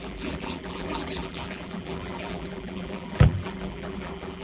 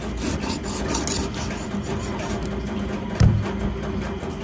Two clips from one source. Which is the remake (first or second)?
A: first